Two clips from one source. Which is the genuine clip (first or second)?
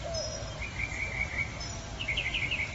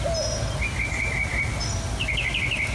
second